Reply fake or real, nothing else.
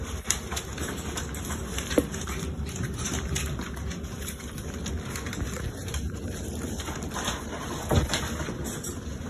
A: fake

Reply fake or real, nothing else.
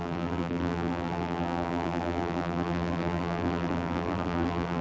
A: fake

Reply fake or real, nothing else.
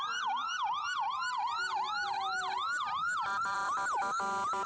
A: fake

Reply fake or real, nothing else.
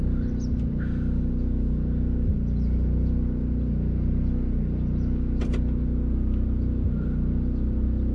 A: real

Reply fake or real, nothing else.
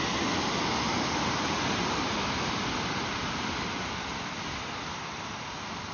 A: fake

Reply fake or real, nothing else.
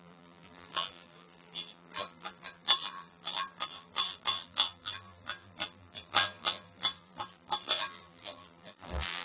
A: fake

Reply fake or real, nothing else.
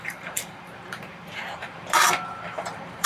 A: fake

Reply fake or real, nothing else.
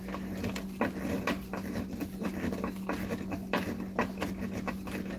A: real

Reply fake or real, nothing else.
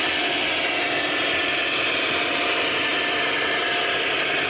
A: real